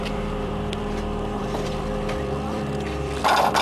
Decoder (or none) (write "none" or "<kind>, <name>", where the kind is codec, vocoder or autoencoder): vocoder, BigVGAN v2